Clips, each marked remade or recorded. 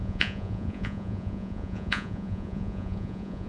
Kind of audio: remade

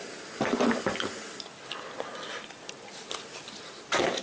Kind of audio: recorded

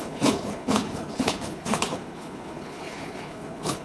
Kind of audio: remade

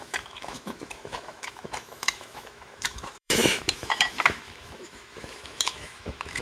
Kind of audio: remade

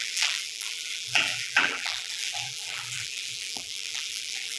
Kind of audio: remade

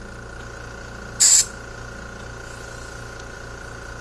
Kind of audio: recorded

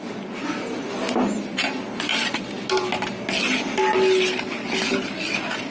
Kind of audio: recorded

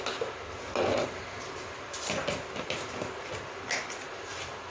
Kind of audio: recorded